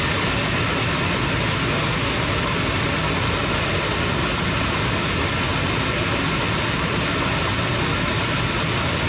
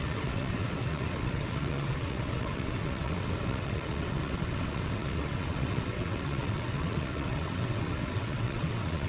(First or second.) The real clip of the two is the first